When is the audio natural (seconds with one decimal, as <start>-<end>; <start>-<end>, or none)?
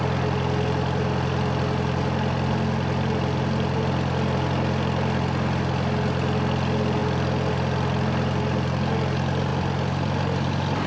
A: 0.0-10.9